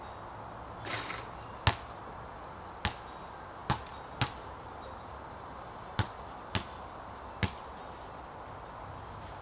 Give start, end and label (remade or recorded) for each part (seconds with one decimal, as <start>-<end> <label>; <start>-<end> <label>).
0.0-9.4 recorded